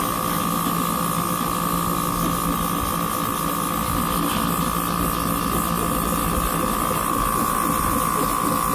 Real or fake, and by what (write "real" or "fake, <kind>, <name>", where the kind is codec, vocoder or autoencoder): real